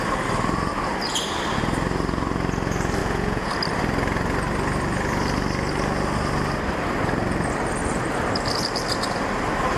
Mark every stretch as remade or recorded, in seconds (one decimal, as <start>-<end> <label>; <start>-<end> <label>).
0.0-3.0 recorded; 3.0-3.5 remade; 3.5-9.8 recorded